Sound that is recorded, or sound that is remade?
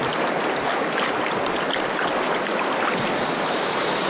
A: recorded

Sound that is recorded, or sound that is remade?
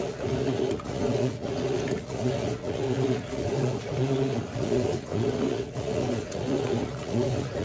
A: remade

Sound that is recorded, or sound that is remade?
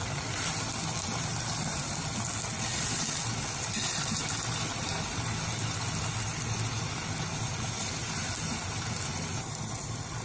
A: recorded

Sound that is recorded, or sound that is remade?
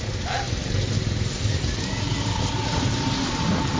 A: recorded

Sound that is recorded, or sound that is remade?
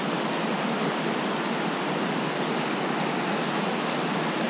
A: recorded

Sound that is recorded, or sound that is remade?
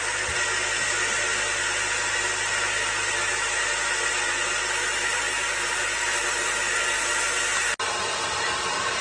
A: recorded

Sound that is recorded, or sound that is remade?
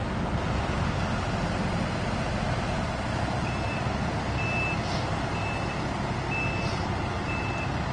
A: recorded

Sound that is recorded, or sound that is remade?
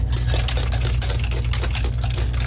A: recorded